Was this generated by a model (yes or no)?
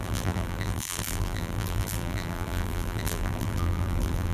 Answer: yes